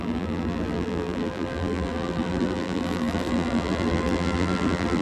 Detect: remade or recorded remade